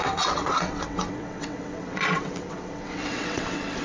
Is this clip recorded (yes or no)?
no